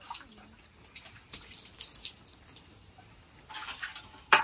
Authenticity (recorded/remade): recorded